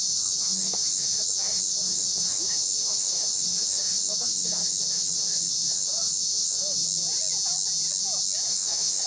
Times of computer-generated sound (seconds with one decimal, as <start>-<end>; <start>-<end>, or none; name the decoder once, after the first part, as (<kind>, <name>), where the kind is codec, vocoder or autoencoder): 0.0-6.8 (autoencoder, DAC-VAE); 8.5-9.1